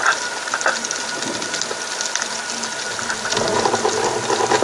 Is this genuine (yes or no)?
yes